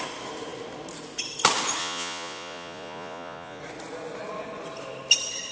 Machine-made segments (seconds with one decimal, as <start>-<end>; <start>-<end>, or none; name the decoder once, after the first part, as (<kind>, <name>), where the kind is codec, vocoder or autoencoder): 1.8-3.6 (vocoder, Vocos)